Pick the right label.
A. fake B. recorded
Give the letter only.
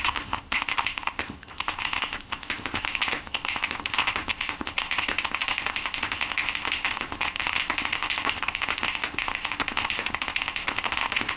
A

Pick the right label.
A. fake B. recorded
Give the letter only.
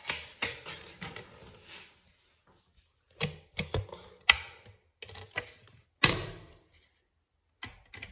B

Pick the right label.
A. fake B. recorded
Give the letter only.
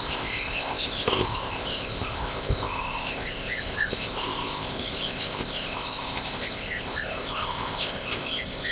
A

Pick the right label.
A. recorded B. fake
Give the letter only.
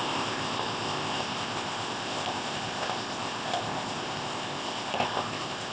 B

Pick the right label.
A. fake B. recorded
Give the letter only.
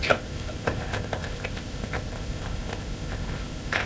A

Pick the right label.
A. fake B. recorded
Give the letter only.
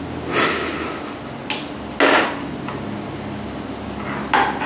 B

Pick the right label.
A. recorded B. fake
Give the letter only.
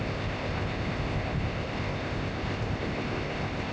B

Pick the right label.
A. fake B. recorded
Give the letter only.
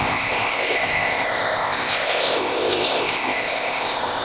A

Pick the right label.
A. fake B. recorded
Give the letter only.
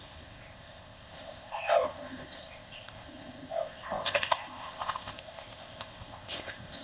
A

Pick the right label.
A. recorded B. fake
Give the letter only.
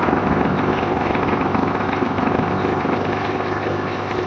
B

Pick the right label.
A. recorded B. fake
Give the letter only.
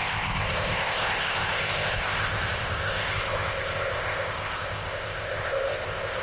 B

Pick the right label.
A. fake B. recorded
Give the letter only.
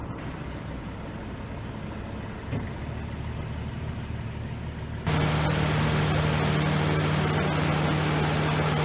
B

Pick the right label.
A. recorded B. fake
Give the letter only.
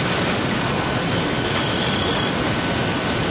A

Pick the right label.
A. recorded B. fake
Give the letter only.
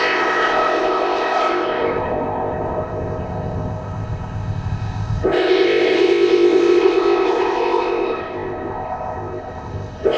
B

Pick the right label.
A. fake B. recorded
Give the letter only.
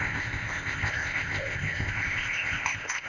A